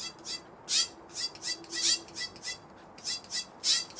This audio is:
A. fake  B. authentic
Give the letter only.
B